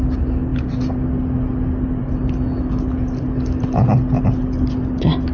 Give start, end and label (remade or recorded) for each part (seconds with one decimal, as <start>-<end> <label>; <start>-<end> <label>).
0.0-5.3 recorded